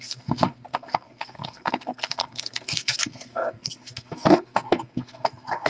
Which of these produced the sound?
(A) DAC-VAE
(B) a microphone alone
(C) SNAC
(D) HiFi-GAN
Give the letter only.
C